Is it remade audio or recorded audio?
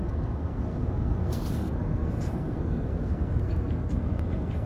remade